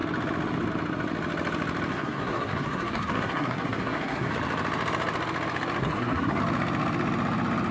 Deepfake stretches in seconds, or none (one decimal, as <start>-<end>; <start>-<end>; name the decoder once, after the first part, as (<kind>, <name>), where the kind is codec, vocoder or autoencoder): 1.9-4.3 (codec, SNAC); 5.8-6.4

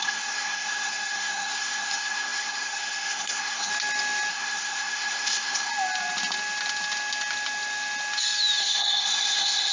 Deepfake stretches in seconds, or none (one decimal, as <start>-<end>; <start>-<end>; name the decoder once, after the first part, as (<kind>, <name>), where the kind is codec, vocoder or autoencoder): 0.0-3.7 (codec, SNAC); 4.3-5.7; 8.6-9.7

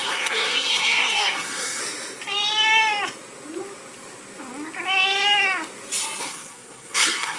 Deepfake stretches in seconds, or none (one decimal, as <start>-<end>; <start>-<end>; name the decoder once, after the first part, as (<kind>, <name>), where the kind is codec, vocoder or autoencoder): 0.0-1.8 (codec, SNAC); 6.2-7.4